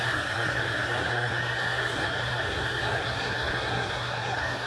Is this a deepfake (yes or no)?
yes